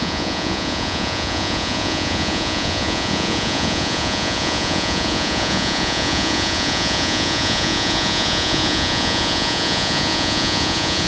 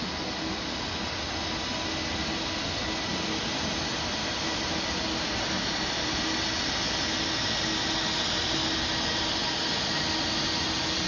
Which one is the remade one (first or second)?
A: first